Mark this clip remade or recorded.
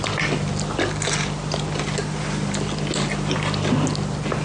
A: recorded